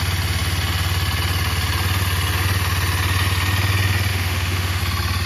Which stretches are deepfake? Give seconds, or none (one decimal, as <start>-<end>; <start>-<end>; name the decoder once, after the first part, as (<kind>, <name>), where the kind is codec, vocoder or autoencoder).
4.1-4.8 (autoencoder, DAC-VAE)